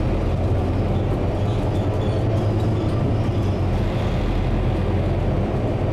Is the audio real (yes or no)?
yes